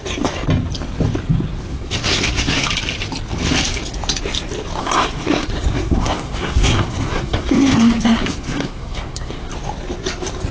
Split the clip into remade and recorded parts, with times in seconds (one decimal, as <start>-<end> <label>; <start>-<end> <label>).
0.0-1.7 recorded; 1.7-2.7 remade; 2.7-4.8 recorded; 4.8-9.5 remade; 9.5-10.5 recorded